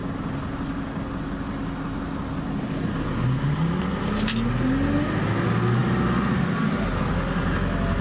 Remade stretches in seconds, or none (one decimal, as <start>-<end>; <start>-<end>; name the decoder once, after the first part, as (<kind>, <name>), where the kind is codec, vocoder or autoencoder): none

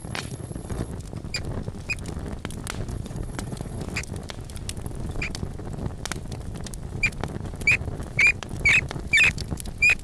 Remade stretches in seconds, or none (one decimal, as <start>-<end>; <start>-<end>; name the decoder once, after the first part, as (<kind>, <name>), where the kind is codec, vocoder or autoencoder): 0.0-0.9 (vocoder, Vocos); 2.9-3.8

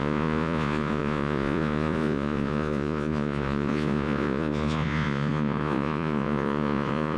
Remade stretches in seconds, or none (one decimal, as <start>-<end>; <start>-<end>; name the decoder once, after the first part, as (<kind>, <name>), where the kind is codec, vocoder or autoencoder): 0.0-7.2 (vocoder, Vocos)

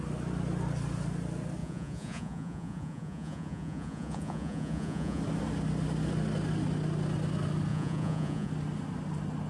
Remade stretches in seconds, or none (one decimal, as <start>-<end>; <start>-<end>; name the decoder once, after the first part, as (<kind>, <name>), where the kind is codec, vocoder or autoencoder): 1.6-5.2 (vocoder, Vocos); 7.7-8.5

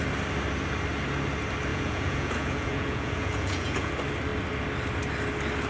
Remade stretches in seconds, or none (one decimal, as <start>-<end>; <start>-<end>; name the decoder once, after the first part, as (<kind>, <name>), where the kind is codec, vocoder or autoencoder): 1.7-3.9 (vocoder, Vocos)

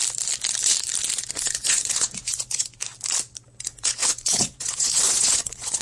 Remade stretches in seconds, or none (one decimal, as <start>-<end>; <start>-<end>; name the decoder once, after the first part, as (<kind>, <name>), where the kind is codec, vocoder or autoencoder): 1.3-2.8 (vocoder, Vocos); 3.6-5.8